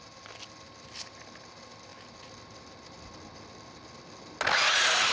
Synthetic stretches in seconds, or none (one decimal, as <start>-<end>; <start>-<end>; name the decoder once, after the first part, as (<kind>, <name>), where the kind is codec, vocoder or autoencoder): none